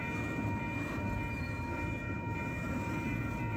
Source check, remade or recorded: recorded